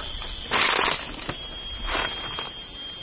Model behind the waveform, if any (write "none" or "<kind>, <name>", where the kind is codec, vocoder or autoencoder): none